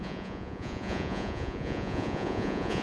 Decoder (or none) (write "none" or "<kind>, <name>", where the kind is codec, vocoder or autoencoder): vocoder, Vocos